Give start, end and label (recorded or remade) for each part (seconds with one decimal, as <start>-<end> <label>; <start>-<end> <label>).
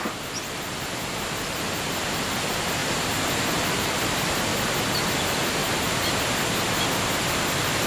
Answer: 0.0-2.8 recorded; 2.8-3.7 remade; 3.7-4.5 recorded; 4.5-5.0 remade; 5.0-5.6 recorded; 5.6-6.2 remade; 6.2-7.9 recorded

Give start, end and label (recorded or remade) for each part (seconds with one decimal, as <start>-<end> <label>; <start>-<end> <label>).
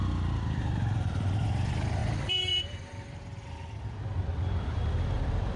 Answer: 0.0-5.6 remade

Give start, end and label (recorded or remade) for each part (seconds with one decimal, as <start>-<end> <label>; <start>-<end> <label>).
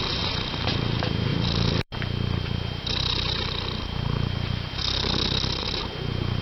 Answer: 0.0-1.3 recorded; 1.3-5.1 remade; 5.1-6.4 recorded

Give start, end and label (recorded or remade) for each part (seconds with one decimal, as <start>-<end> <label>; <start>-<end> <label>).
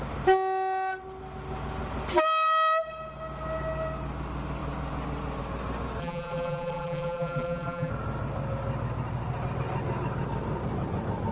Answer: 0.0-6.0 recorded; 6.0-7.9 remade; 7.9-11.3 recorded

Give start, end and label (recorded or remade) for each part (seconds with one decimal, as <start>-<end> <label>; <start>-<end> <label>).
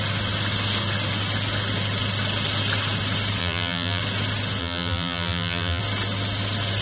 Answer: 0.0-3.4 recorded; 3.4-4.0 remade; 4.0-4.6 recorded; 4.6-5.8 remade; 5.8-6.8 recorded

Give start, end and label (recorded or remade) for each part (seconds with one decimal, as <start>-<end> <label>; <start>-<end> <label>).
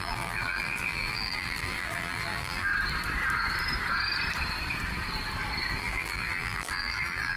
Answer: 0.0-2.7 remade; 2.7-5.8 recorded; 5.8-7.4 remade